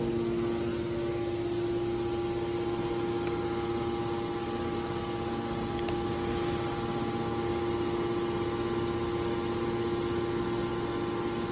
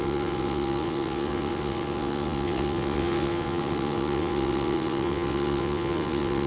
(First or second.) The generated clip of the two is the second